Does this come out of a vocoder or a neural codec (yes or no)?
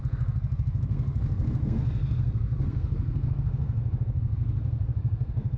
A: yes